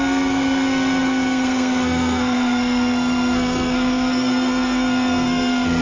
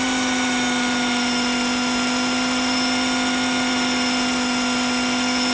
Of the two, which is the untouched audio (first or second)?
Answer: second